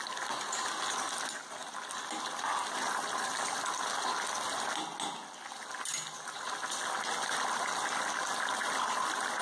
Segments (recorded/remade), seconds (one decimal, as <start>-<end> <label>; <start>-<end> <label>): 0.0-9.4 recorded